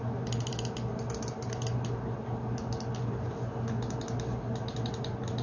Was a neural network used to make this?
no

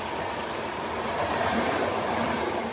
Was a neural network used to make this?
no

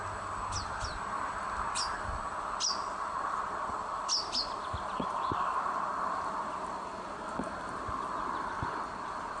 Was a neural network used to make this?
no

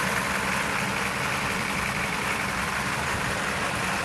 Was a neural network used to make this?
yes